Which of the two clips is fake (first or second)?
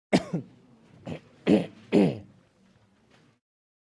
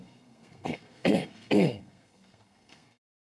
second